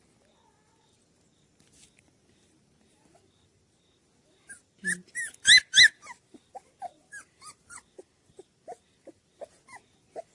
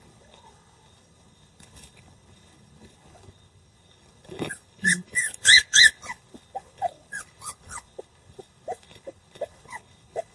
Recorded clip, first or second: first